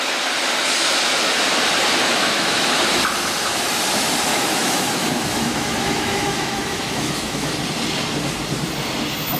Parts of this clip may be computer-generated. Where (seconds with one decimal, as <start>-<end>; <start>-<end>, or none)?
2.0-2.8; 4.3-7.5